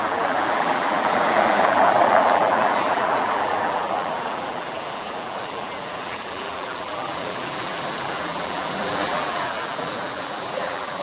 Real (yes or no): no